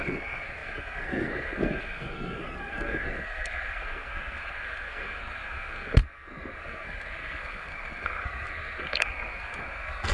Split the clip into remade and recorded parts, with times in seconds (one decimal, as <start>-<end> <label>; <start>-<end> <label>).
0.0-10.1 remade